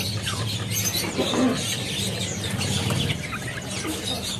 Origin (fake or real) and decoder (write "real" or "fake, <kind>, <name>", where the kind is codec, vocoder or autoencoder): real